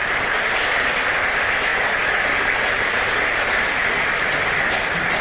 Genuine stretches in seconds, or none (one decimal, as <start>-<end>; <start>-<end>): 0.0-5.2